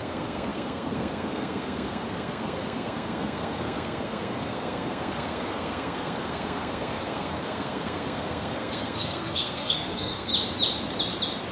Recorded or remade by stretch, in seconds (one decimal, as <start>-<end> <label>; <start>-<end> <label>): 0.0-10.3 remade; 10.3-11.5 recorded